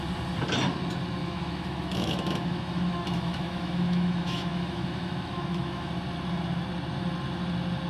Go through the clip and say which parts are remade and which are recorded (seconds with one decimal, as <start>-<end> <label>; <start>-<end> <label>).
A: 0.0-1.2 recorded; 1.2-5.9 remade; 5.9-7.9 recorded